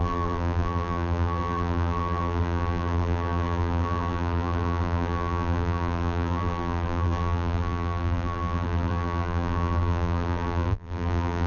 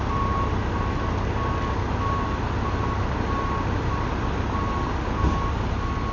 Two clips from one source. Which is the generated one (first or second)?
first